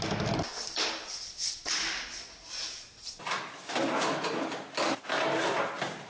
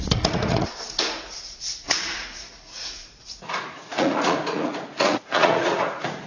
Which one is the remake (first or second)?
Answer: second